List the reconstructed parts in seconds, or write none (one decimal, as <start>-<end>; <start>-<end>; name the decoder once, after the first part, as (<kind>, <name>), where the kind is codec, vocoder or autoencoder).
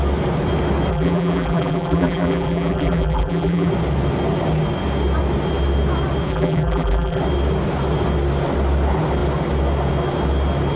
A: 0.9-3.7 (vocoder, BigVGAN v2); 6.3-7.2